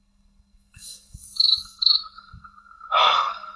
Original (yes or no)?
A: no